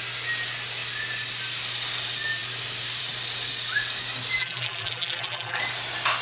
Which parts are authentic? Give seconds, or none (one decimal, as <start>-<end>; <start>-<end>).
0.0-4.4; 5.6-6.2

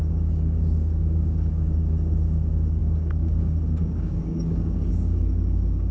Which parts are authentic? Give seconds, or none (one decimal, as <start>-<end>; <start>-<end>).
none

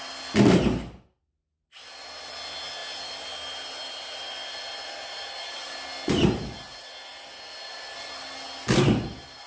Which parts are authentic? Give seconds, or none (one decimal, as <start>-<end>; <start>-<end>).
0.0-9.5

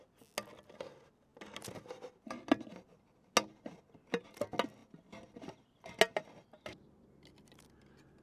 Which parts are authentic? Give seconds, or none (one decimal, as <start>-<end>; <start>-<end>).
0.0-8.2

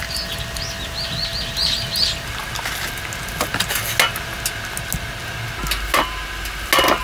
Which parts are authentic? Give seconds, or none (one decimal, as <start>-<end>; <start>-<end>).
0.0-7.0

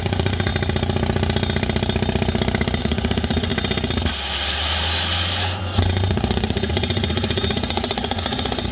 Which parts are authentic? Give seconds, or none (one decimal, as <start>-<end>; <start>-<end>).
0.5-2.8; 3.5-5.6

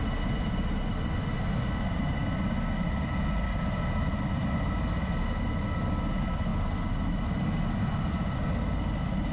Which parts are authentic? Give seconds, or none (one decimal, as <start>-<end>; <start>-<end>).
0.0-9.3